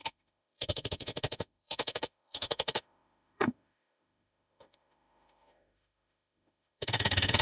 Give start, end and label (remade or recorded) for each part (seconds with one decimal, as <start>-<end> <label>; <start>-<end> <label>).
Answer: 0.0-7.4 remade